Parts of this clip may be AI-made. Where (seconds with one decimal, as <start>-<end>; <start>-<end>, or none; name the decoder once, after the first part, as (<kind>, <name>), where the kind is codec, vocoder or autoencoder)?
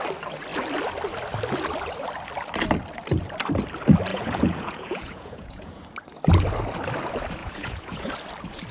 4.1-5.8 (vocoder, Vocos); 7.4-8.1